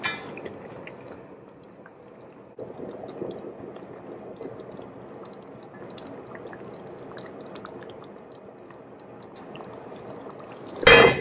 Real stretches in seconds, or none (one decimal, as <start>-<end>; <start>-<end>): 0.0-11.2